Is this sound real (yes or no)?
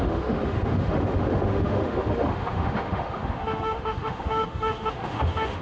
no